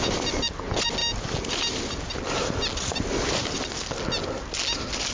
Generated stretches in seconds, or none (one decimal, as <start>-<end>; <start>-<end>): none

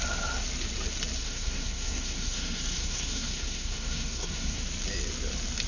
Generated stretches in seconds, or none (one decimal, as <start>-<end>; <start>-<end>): 1.2-4.6

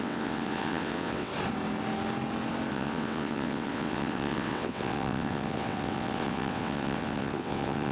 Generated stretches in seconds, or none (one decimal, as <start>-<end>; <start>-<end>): 0.0-1.3; 2.7-7.9

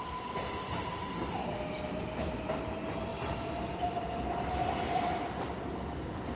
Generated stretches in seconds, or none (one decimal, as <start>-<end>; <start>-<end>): none

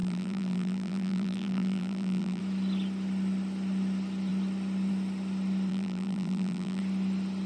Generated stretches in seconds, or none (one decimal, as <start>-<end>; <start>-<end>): 0.0-2.4; 5.7-6.8

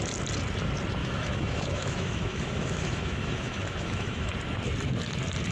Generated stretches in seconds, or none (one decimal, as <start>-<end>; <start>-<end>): 1.0-4.3